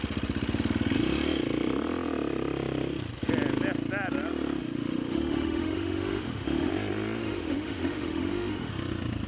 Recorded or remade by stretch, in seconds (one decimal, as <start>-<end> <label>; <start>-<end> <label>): 0.0-4.6 recorded; 4.6-6.7 remade; 6.7-7.2 recorded; 7.2-8.7 remade; 8.7-9.3 recorded